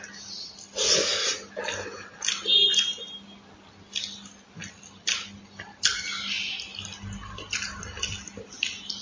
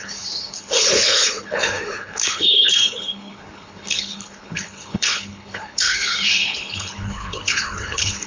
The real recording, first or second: first